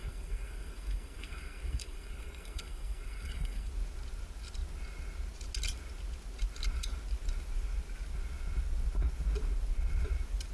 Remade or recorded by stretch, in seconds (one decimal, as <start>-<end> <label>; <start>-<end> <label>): 0.0-3.7 remade; 3.7-10.5 recorded